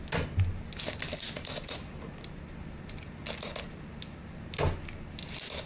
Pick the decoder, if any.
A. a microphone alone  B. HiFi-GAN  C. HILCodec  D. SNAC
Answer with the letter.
A